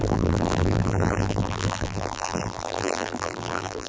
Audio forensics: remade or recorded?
remade